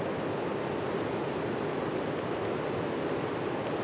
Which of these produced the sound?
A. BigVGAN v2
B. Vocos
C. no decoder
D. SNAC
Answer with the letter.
C